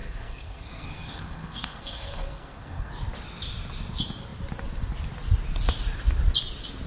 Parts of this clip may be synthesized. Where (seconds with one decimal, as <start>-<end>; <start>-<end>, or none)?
0.0-2.9